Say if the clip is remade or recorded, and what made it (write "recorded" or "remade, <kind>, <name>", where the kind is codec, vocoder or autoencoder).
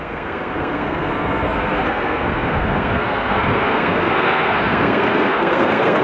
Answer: remade, codec, SNAC